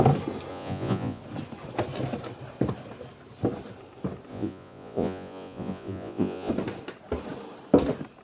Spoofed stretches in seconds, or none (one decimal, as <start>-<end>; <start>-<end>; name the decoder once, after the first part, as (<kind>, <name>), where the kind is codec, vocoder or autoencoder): 0.5-1.2 (vocoder, Vocos); 4.3-6.5